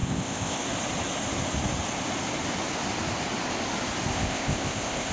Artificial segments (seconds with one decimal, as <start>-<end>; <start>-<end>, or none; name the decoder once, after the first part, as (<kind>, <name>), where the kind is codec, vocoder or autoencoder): 0.0-0.6 (codec, ZipCodec); 4.1-5.1